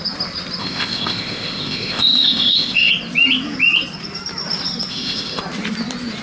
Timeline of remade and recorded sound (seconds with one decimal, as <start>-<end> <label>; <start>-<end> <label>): 0.0-0.6 recorded; 0.6-2.9 remade; 2.9-4.9 recorded; 4.9-5.4 remade; 5.4-6.2 recorded